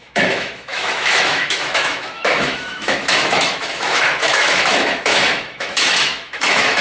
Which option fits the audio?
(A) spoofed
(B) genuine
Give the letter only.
A